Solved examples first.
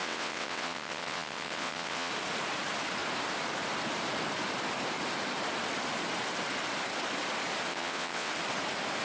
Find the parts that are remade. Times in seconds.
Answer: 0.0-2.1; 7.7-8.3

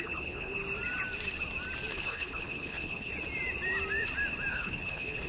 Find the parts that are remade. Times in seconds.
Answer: 0.0-0.6; 1.9-3.1; 4.5-5.3

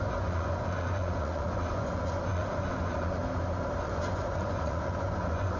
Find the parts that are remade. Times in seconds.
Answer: 0.0-3.2; 3.8-5.6

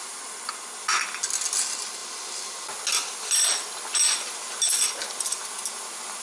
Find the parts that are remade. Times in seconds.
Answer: none